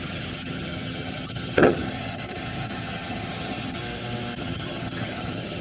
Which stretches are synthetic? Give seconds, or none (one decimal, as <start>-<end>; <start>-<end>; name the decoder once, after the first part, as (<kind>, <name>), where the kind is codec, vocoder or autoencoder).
0.0-3.8 (vocoder, HiFi-GAN); 4.4-5.6